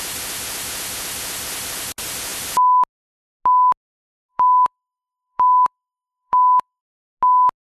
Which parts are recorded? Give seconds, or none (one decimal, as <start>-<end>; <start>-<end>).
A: 0.0-4.3; 6.8-7.7